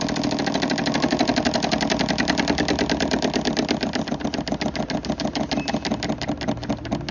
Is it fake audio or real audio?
real